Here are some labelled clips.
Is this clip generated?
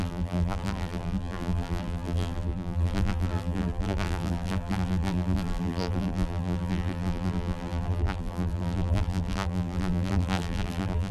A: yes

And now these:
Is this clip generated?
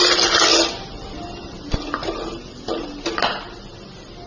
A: no